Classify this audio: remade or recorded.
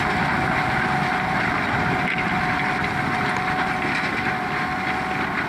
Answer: recorded